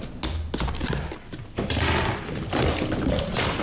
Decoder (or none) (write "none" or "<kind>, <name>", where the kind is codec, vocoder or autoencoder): none